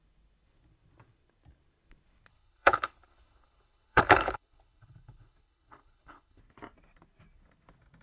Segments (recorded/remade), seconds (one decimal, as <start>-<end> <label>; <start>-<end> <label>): 0.0-2.3 recorded; 2.3-6.4 remade; 6.4-8.0 recorded